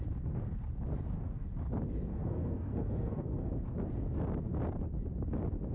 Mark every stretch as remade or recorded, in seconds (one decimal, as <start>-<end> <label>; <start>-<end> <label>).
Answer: 0.0-2.1 recorded; 2.1-3.5 remade; 3.5-5.7 recorded